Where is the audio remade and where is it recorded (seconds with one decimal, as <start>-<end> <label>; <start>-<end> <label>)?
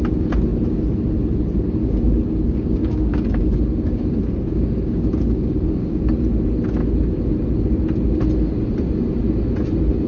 0.0-1.8 recorded; 1.8-6.0 remade; 6.0-10.1 recorded